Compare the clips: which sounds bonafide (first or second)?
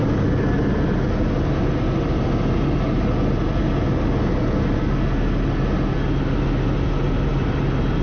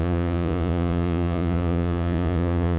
first